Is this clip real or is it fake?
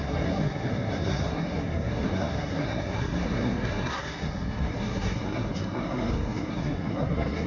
fake